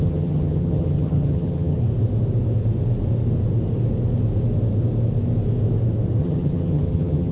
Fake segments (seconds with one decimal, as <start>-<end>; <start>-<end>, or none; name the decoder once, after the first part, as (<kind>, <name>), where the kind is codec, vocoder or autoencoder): 0.0-1.8 (vocoder, HiFi-GAN); 6.2-7.3